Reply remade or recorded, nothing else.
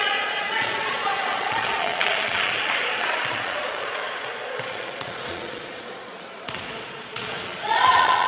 remade